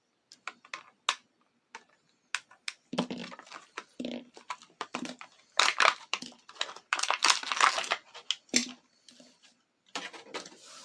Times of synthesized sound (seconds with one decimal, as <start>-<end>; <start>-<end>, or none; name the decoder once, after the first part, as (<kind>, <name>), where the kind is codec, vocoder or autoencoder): 3.2-7.7 (vocoder, BigVGAN v2); 8.6-10.0